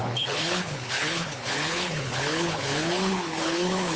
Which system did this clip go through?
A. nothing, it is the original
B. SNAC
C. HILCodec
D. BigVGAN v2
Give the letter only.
C